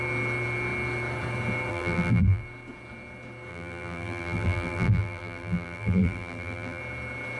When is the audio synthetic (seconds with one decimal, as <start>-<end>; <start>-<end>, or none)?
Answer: 1.7-2.4; 3.5-6.8